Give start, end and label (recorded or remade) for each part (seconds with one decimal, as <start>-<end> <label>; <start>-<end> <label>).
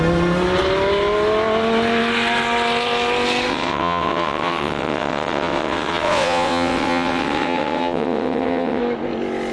0.0-3.5 recorded; 3.5-8.8 remade; 8.8-9.5 recorded